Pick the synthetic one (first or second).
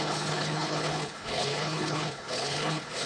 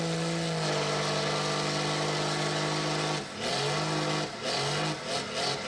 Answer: first